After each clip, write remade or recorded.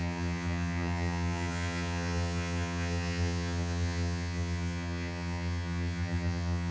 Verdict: remade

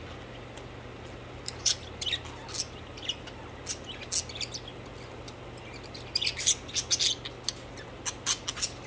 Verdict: recorded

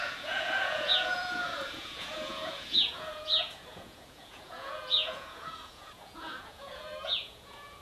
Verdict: remade